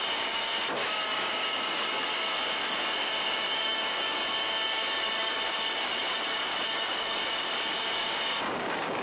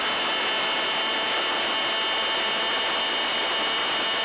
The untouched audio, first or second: second